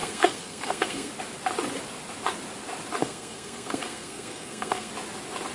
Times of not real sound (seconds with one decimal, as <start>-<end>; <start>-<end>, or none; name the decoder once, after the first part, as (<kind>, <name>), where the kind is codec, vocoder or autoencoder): 0.0-1.1 (codec, SNAC); 3.0-4.9